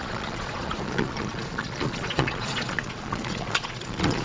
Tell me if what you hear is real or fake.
fake